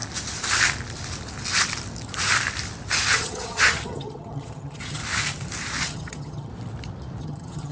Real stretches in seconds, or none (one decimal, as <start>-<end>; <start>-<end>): 0.0-3.1; 5.0-5.8; 6.5-7.2